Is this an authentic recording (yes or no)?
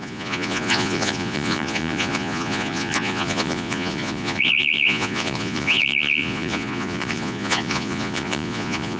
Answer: no